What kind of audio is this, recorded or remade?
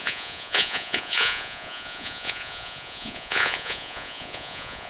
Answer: remade